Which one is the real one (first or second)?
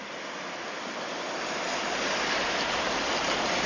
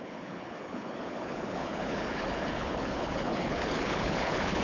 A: first